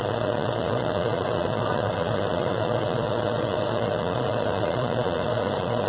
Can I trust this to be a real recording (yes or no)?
no